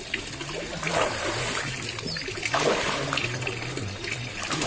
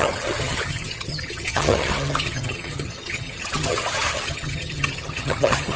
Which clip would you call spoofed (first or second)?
second